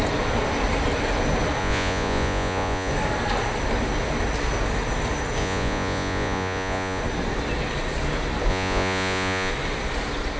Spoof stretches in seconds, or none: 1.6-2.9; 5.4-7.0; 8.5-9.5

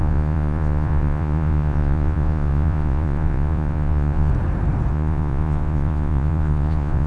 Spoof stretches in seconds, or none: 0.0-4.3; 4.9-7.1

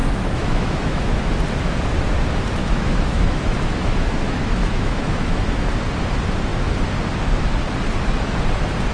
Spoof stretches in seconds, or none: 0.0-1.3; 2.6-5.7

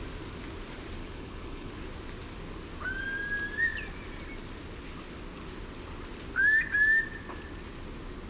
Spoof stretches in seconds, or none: 1.0-1.7

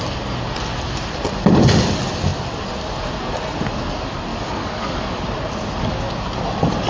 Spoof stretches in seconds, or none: 4.3-5.2

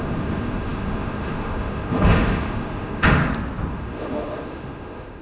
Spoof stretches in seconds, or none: 0.0-3.2; 3.7-5.2

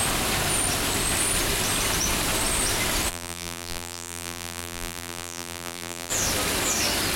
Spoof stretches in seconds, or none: 3.1-6.1